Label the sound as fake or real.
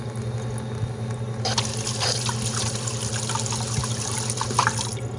real